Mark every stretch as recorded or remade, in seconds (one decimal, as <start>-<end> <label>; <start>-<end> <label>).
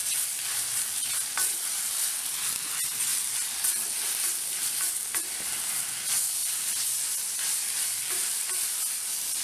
0.0-1.9 remade; 1.9-6.4 recorded; 6.4-7.6 remade; 7.6-8.3 recorded; 8.3-9.4 remade